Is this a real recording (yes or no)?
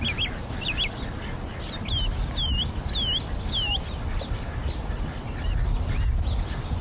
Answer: yes